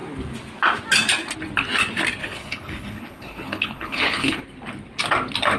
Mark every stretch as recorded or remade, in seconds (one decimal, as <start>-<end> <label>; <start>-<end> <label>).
0.0-2.2 recorded; 2.2-4.4 remade; 4.4-5.6 recorded